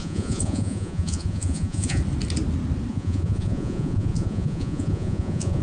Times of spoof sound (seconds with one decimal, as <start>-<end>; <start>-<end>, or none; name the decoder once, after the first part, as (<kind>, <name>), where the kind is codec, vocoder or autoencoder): 0.0-2.0 (vocoder, Vocos); 2.9-5.6